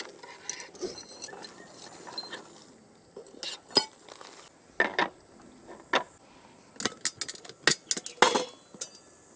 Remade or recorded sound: recorded